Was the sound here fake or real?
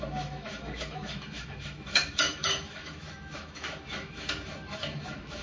fake